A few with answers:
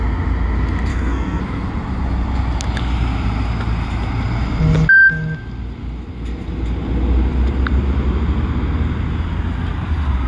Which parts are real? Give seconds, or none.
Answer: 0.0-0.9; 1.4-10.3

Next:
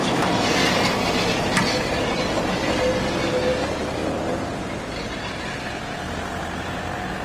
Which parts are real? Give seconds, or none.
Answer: 0.0-7.2